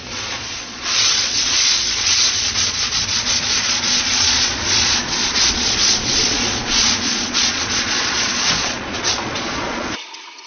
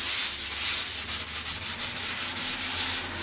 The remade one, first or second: first